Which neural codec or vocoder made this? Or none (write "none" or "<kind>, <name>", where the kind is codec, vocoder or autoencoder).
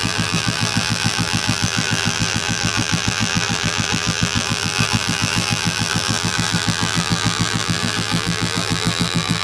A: vocoder, BigVGAN v2